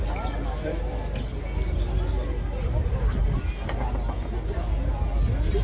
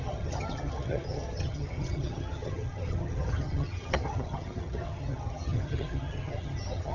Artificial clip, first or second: second